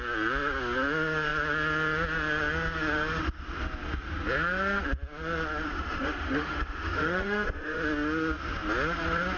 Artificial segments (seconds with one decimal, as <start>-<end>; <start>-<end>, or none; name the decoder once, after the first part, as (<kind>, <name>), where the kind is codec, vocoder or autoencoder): 5.7-7.8 (autoencoder, DAC-VAE)